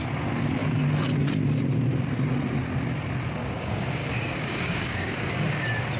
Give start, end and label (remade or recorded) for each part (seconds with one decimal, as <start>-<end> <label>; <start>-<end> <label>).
0.0-3.4 recorded; 3.4-5.5 remade; 5.5-6.0 recorded